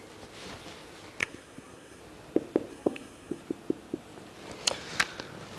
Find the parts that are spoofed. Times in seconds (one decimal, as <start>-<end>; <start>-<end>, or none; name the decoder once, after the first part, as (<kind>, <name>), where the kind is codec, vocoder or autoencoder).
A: 1.2-2.0 (codec, SNAC); 2.7-3.4